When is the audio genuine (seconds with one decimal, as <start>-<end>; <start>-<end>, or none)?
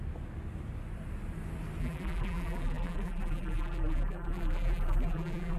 0.0-1.8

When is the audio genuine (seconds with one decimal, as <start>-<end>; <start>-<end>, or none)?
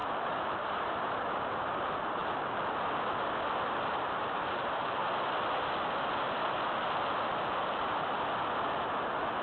2.2-3.9; 5.0-9.4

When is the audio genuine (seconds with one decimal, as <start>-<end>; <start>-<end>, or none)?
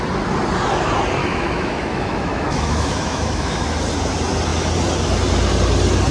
0.0-1.2; 3.6-6.1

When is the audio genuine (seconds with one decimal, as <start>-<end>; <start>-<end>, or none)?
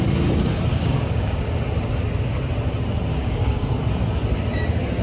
0.0-0.7; 1.6-3.2; 3.8-5.0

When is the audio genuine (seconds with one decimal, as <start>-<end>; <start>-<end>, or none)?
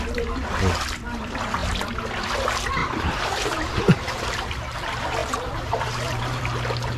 0.0-2.8; 4.2-5.2; 6.4-7.0